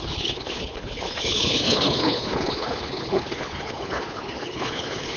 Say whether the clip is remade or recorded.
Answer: remade